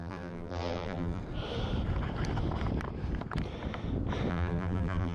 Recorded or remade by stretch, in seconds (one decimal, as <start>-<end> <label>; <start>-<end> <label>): 0.0-1.2 remade; 1.2-4.3 recorded; 4.3-5.1 remade